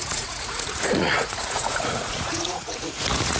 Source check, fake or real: fake